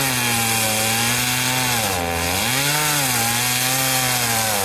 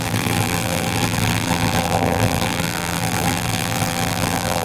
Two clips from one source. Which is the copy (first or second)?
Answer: second